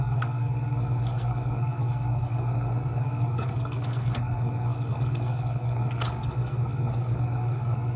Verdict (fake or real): fake